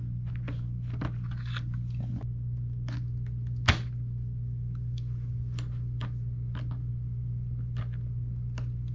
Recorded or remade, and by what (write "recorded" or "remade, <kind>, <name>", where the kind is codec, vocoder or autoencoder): recorded